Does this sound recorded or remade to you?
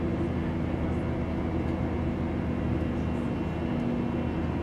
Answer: recorded